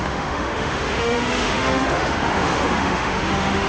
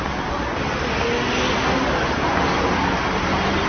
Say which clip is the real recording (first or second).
second